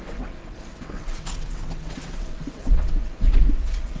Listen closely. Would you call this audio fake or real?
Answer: fake